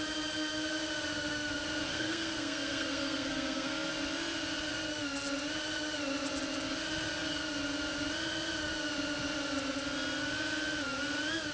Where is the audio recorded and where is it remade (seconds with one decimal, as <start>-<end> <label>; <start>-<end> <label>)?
0.0-1.9 recorded; 1.9-3.9 remade; 3.9-11.5 recorded